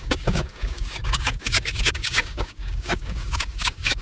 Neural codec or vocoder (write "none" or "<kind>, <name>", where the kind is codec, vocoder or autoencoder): codec, DAC